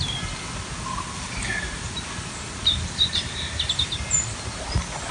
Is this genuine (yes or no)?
yes